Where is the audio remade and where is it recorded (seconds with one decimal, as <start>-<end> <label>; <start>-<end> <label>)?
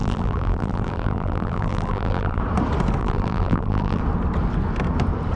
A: 0.0-2.4 remade; 2.4-3.0 recorded; 3.0-4.0 remade; 4.0-5.4 recorded